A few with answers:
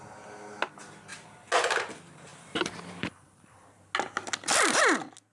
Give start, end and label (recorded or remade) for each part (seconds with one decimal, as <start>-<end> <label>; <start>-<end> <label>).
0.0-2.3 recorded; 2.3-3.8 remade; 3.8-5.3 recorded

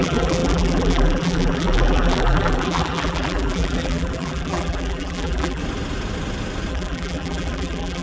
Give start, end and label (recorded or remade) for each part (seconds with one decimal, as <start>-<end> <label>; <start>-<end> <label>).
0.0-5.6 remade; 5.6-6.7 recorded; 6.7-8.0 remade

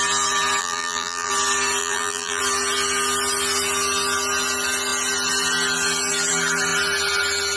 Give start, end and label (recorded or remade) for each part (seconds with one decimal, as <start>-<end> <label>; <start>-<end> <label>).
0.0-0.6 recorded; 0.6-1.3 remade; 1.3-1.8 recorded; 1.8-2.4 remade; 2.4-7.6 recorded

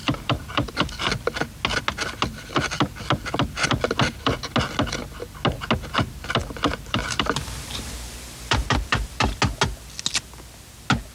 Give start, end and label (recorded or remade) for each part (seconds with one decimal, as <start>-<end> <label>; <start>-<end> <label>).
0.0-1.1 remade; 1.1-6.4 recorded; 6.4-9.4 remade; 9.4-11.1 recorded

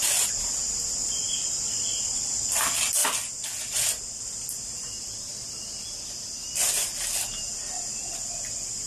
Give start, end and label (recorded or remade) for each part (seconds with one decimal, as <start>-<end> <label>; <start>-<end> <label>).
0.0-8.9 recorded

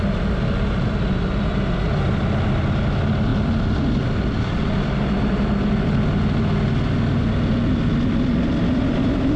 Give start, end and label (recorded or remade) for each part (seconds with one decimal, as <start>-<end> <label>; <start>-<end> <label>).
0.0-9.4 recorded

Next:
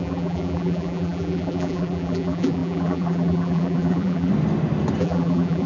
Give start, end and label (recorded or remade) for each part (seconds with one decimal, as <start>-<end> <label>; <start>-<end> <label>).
0.0-4.3 remade; 4.3-5.0 recorded; 5.0-5.7 remade